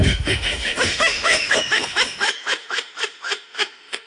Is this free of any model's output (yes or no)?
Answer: no